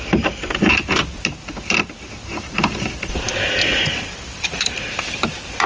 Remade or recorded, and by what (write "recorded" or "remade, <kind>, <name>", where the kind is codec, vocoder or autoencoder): recorded